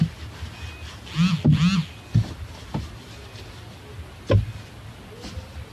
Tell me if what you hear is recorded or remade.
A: recorded